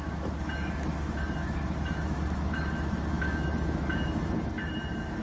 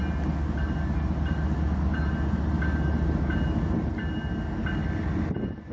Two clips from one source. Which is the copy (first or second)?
first